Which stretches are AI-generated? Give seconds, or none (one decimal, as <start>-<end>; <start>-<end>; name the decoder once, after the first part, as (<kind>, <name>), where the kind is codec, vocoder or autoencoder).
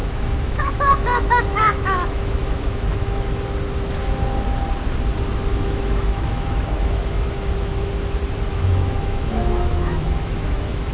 0.0-3.4 (autoencoder, DAC-VAE); 5.5-7.9; 8.5-10.9